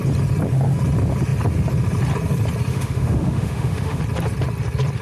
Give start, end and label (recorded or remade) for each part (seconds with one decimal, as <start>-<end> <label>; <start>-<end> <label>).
0.0-2.7 recorded; 2.7-4.0 remade; 4.0-5.0 recorded